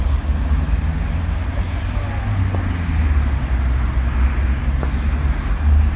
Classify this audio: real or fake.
real